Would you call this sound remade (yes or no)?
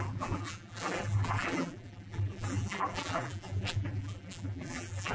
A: yes